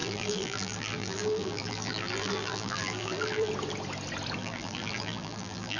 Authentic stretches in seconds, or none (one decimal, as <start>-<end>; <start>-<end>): 3.5-4.4

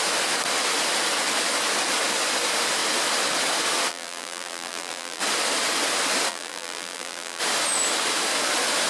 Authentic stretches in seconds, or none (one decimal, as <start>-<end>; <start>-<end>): 0.0-3.9; 5.2-6.3; 7.4-8.9

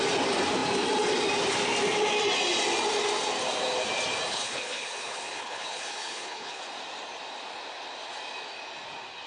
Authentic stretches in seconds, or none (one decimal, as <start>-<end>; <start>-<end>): 0.0-4.3; 6.6-9.3

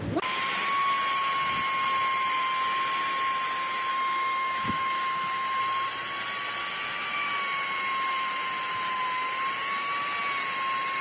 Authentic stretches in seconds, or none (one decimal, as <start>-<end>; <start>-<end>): 0.0-3.9; 5.6-6.6; 7.3-11.0